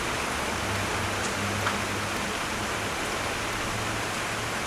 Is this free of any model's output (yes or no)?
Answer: yes